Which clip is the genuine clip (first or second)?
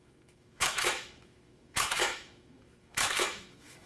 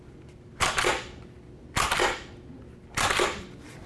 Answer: second